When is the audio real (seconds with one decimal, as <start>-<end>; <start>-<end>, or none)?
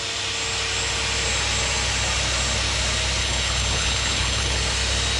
0.0-3.2; 4.6-5.2